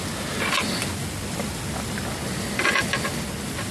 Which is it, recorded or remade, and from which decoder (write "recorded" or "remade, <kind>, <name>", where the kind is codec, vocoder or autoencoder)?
recorded